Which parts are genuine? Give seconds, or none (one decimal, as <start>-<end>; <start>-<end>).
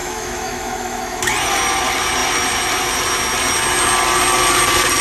1.2-5.0